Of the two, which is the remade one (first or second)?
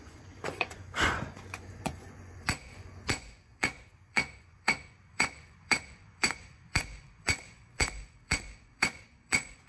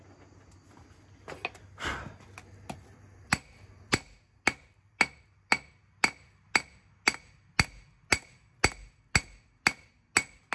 first